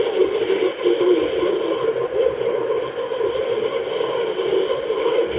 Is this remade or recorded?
recorded